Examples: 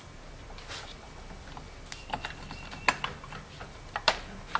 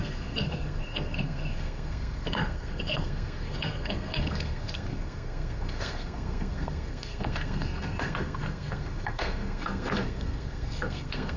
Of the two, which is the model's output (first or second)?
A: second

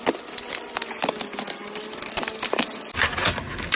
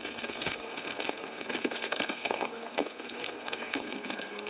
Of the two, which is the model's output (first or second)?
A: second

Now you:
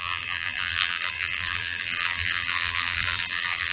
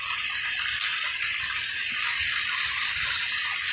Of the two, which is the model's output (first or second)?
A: first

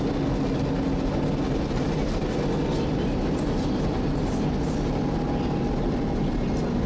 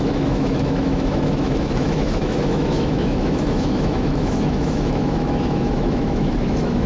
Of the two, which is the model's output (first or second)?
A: second